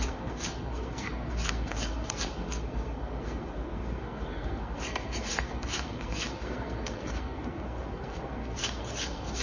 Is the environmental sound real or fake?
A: fake